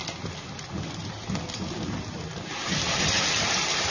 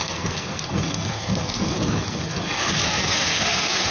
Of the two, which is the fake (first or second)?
second